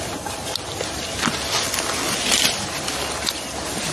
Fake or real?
real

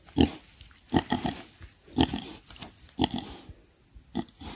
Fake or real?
real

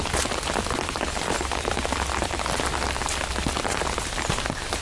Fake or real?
real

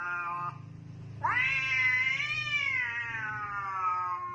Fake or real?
real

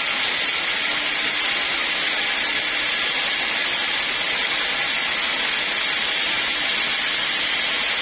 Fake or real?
real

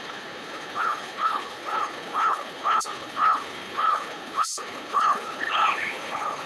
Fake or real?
fake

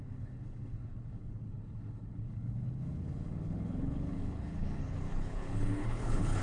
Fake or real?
fake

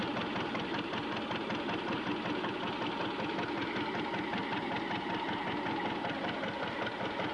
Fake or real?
real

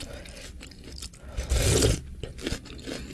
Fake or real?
real